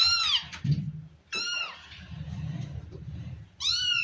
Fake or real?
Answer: fake